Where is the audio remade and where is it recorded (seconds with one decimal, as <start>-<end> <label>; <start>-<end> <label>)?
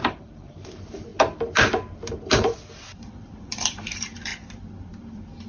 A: 0.0-1.1 remade; 1.1-2.1 recorded; 2.1-2.5 remade; 2.5-3.0 recorded; 3.0-4.3 remade; 4.3-5.0 recorded; 5.0-5.5 remade